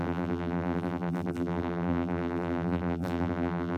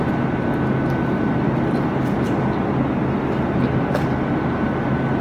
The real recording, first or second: second